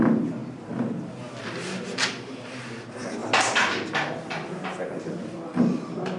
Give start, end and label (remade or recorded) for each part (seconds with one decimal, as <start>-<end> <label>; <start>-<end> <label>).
0.0-6.2 recorded